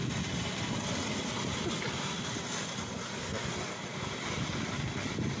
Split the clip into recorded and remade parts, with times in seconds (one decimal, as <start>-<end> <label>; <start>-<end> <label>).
0.0-3.9 recorded; 3.9-4.6 remade; 4.6-5.4 recorded